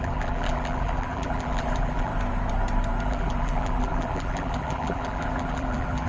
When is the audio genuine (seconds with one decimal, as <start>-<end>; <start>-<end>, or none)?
2.1-3.0